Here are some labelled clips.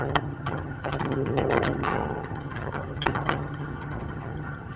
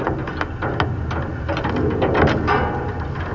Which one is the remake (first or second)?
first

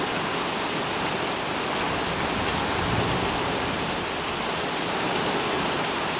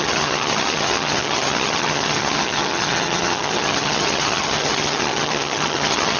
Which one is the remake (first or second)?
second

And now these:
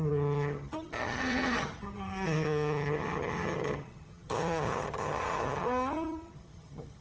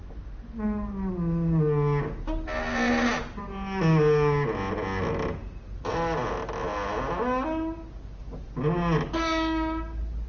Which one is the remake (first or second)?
first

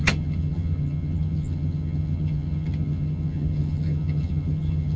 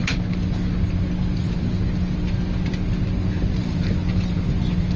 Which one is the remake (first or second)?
first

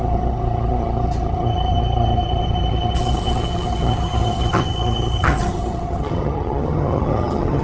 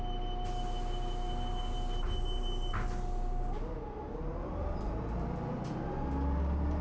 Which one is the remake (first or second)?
first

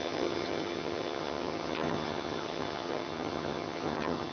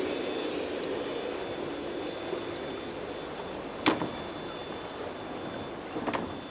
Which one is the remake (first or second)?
first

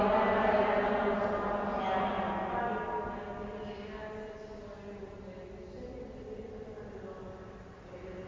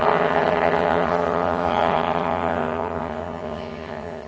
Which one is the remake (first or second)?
second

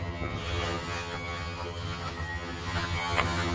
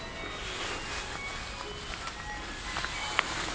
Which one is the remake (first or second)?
first